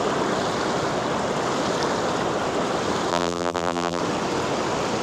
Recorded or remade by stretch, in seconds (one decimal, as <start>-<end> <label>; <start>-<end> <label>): 0.0-3.1 recorded; 3.1-4.0 remade; 4.0-5.0 recorded